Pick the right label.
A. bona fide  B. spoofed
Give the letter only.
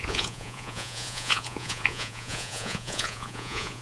B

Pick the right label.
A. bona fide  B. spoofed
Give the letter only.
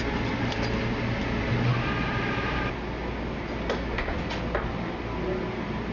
A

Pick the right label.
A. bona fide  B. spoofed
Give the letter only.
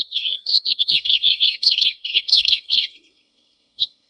B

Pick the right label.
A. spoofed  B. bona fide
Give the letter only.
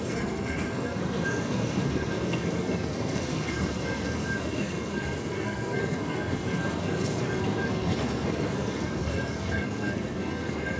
A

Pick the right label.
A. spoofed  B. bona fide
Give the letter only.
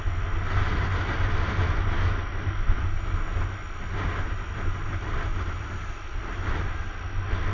B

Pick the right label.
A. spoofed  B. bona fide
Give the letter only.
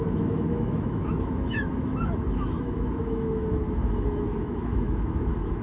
A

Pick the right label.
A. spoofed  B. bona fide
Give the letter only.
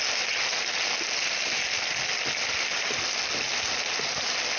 B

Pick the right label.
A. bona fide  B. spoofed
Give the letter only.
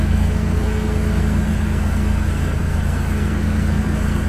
B